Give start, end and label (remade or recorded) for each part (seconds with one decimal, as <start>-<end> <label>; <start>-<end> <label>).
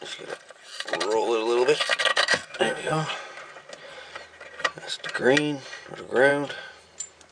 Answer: 0.0-2.1 recorded; 2.1-3.1 remade; 3.1-7.3 recorded